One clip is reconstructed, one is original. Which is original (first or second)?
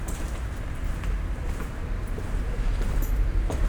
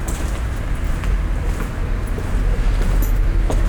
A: second